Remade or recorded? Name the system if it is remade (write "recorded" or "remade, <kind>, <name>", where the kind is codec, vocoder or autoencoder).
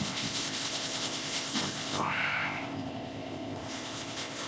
remade, codec, ZipCodec